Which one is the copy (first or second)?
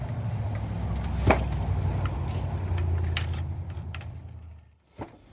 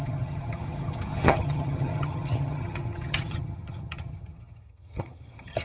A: second